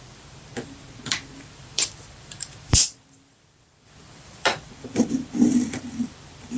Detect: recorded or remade remade